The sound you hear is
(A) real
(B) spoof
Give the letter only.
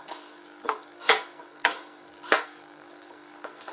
B